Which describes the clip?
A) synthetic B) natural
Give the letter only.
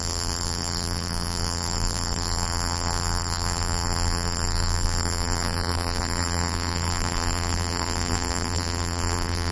A